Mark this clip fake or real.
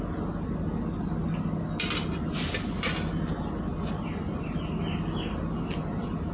real